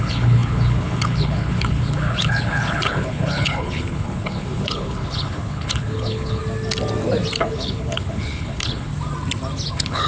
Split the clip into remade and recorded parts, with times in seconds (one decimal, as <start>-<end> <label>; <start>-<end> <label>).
0.0-6.4 remade; 6.4-7.4 recorded; 7.4-8.9 remade; 8.9-9.7 recorded; 9.7-10.1 remade